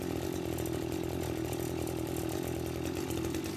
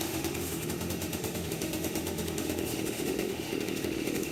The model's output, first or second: second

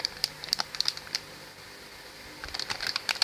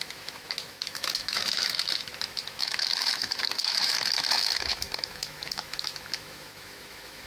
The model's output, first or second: second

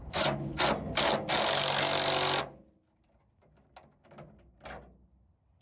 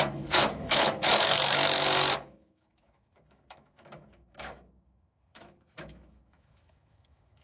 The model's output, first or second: second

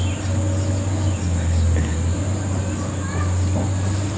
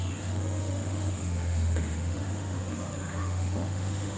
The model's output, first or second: second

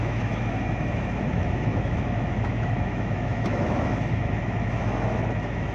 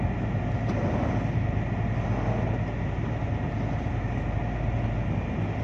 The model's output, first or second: first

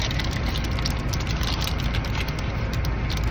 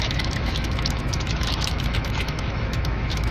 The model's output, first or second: second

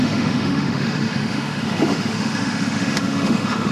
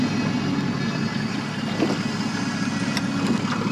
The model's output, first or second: first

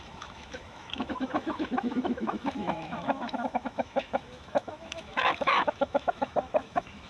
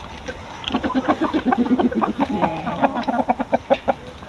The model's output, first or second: first